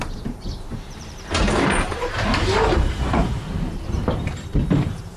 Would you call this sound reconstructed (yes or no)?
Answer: yes